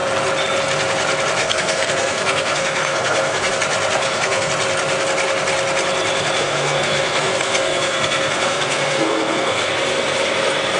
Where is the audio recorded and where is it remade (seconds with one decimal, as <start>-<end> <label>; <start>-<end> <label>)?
0.0-1.4 recorded; 1.4-3.5 remade; 3.5-4.0 recorded; 4.0-4.5 remade; 4.5-6.4 recorded; 6.4-9.7 remade; 9.7-10.8 recorded